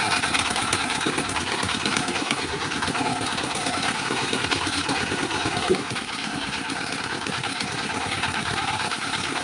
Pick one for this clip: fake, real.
fake